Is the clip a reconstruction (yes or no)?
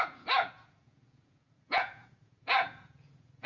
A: yes